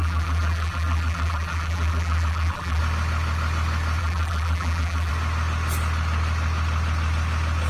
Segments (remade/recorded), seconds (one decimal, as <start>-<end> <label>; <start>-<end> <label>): 0.0-2.8 remade; 2.8-4.0 recorded; 4.0-5.1 remade; 5.1-7.7 recorded